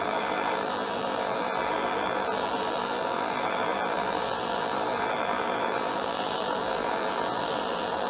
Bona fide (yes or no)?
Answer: no